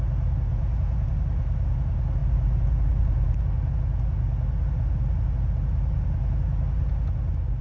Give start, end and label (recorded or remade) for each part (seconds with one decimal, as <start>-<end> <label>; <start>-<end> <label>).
0.0-0.5 recorded; 0.5-1.1 remade; 1.1-7.6 recorded